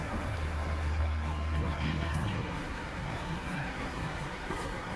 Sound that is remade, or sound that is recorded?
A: remade